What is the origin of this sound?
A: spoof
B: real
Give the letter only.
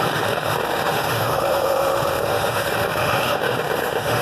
A